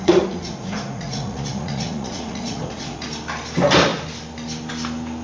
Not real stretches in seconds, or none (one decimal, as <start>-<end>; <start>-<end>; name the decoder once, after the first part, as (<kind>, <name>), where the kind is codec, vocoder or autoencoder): 0.0-3.1 (vocoder, Vocos)